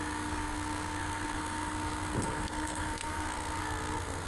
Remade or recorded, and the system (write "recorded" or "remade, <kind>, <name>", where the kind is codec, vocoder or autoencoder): remade, codec, SNAC